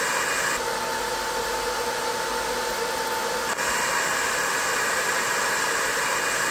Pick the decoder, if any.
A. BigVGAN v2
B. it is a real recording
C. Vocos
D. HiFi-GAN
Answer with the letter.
B